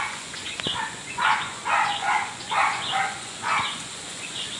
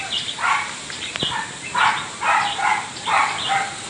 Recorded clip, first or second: second